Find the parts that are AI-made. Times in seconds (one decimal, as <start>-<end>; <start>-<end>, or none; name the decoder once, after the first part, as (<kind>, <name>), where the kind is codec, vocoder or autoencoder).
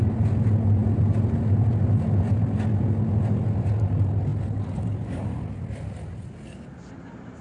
none